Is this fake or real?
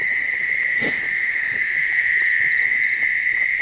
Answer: fake